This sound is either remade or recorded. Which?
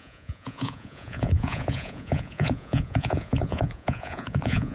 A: remade